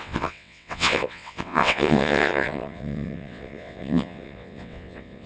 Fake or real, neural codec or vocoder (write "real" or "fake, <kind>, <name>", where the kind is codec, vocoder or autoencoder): fake, vocoder, WaveNeXt